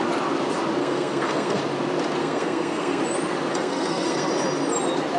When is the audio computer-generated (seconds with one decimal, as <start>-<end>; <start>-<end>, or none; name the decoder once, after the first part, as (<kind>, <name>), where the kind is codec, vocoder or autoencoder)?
0.8-1.6 (codec, SNAC); 2.2-3.0; 3.5-4.3

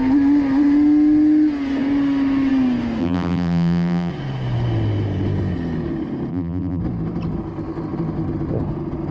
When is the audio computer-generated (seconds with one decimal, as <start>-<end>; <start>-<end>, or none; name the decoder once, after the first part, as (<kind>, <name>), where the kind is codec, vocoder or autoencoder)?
3.0-4.1 (vocoder, BigVGAN v2); 6.3-6.8

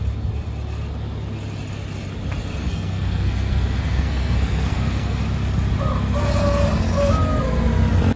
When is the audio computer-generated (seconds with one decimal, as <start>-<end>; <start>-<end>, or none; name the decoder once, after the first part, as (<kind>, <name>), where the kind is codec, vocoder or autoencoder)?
2.6-5.2 (codec, SNAC)

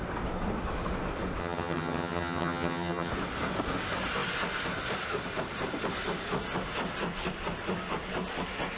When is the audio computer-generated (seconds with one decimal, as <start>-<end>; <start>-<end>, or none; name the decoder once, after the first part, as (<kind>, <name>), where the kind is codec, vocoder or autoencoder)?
1.4-3.1 (vocoder, HiFi-GAN)